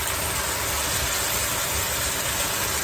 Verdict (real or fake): real